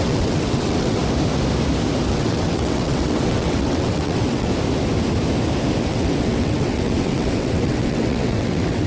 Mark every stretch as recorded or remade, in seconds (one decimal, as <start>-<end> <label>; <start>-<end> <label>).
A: 0.0-1.0 remade; 1.0-2.1 recorded; 2.1-4.5 remade; 4.5-5.8 recorded; 5.8-8.9 remade